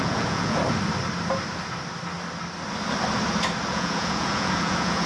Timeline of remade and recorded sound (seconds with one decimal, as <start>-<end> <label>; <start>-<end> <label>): 0.0-0.6 remade; 0.6-3.7 recorded; 3.7-5.1 remade